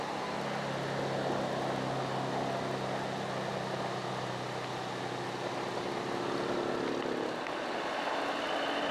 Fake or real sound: real